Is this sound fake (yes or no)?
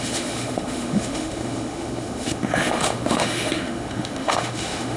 yes